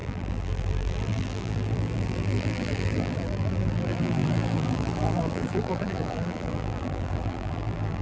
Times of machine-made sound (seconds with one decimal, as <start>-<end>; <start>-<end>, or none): 0.0-8.0